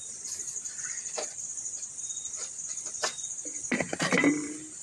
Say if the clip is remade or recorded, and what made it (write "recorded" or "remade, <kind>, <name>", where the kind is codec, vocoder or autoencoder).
recorded